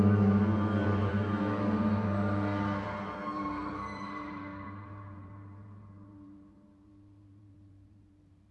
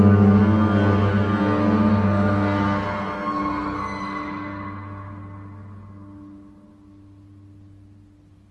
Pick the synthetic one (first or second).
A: first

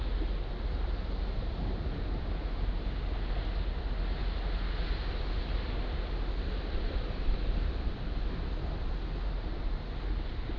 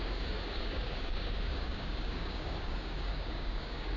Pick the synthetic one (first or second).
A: second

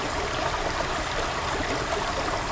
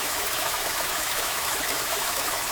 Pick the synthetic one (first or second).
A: second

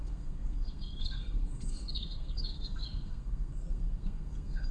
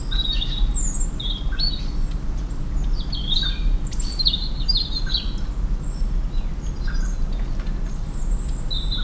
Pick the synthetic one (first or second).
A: first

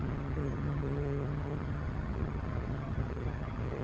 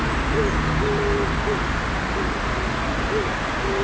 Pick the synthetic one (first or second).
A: first